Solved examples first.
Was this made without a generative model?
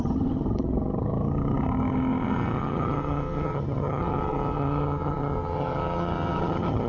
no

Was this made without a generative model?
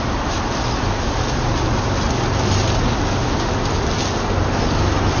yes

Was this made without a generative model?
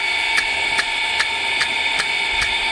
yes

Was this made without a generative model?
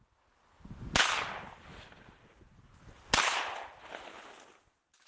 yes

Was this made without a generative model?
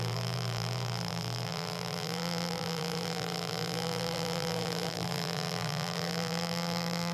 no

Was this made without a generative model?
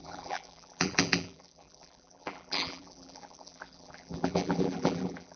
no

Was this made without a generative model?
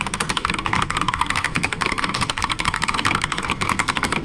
no